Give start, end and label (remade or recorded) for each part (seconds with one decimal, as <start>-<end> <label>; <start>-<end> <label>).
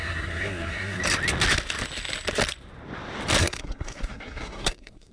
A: 0.0-1.0 remade; 1.0-3.4 recorded; 3.4-5.1 remade